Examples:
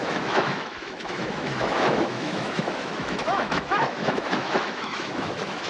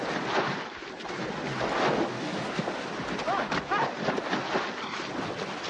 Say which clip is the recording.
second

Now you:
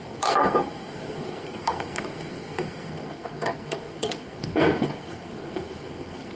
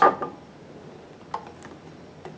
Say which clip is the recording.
second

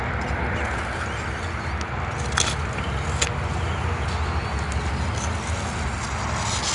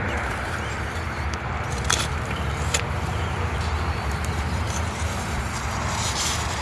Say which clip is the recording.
first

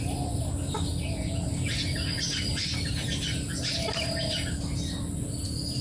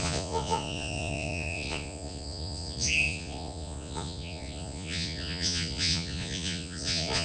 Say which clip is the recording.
first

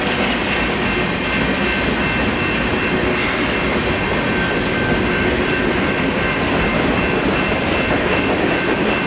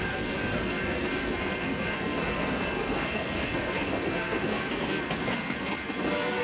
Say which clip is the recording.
first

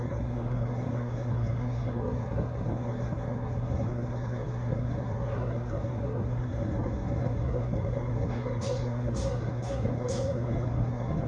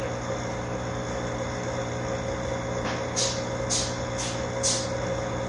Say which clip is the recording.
second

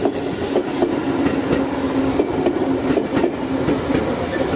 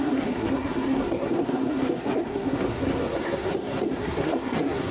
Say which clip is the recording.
first